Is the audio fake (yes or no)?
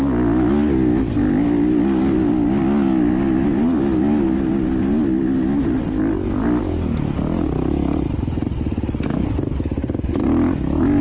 no